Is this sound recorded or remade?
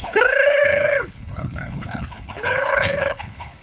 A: remade